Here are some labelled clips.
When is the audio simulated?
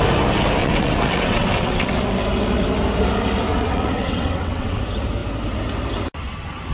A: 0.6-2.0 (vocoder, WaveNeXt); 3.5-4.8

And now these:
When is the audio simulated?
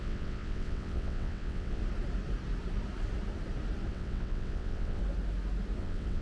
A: 0.0-1.8 (vocoder, WaveNeXt); 3.9-5.0; 5.8-6.2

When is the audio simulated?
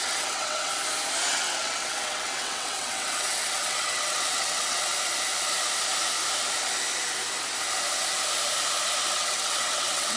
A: 0.0-0.7 (vocoder, WaveNeXt); 1.3-4.9; 9.1-10.2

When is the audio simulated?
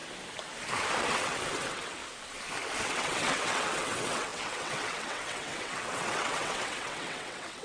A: 1.0-2.0 (vocoder, WaveNeXt); 2.8-7.6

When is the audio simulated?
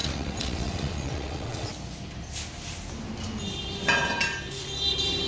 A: 0.0-1.7 (vocoder, WaveNeXt)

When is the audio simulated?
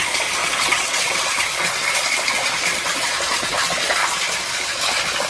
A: 0.4-1.3 (vocoder, WaveNeXt)